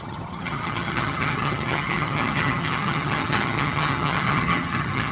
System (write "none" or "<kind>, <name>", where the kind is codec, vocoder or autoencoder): vocoder, HiFi-GAN